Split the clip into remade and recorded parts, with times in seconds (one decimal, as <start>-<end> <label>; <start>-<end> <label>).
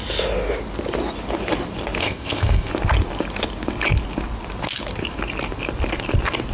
0.0-2.0 recorded; 2.0-2.7 remade; 2.7-6.5 recorded